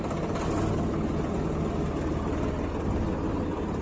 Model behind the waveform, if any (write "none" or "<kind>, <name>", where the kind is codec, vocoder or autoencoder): none